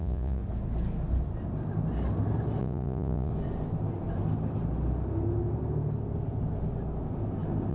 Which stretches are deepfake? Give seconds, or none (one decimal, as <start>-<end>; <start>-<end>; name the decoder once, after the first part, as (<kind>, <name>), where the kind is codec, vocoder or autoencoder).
0.0-0.4 (vocoder, Vocos); 2.6-3.3